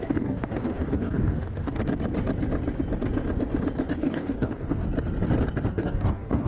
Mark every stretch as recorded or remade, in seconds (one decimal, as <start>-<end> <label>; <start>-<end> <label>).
0.0-1.8 remade; 1.8-3.9 recorded; 3.9-4.8 remade; 4.8-5.7 recorded; 5.7-6.5 remade